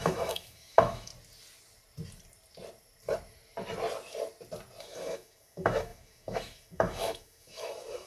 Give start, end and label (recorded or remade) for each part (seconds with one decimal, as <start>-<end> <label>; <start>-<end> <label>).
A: 0.0-1.1 remade; 1.1-4.8 recorded; 4.8-8.1 remade